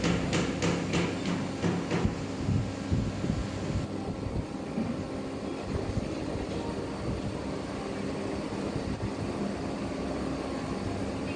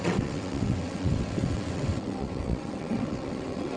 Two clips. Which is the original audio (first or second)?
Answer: first